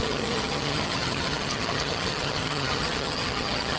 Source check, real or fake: fake